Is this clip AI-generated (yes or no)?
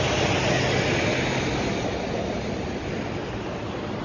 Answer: no